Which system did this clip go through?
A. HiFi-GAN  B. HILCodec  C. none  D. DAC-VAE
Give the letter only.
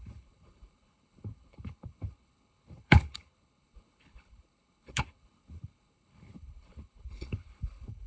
B